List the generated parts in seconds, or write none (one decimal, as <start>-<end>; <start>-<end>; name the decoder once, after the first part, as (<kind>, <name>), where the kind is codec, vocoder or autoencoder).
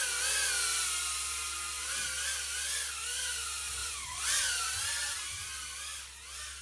3.8-4.5 (vocoder, Vocos)